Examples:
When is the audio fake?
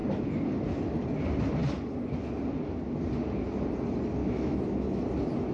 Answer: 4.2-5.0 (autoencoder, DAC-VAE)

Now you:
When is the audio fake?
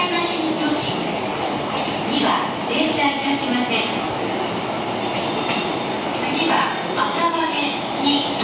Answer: 7.1-8.4 (autoencoder, DAC-VAE)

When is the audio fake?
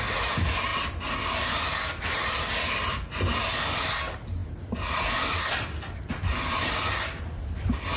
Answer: none